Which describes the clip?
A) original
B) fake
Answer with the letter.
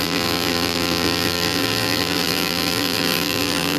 B